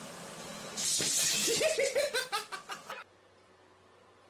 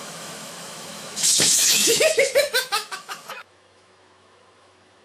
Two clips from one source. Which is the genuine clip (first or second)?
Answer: first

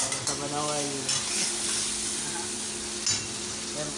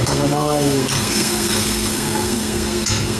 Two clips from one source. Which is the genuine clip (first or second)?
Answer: first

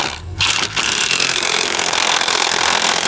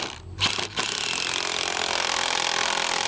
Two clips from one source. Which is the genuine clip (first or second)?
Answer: second